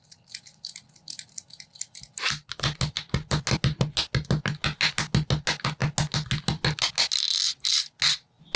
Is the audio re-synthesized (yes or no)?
no